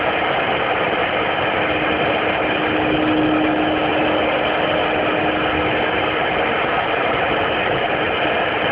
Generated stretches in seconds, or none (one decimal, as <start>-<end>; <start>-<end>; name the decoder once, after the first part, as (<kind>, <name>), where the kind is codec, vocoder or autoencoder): none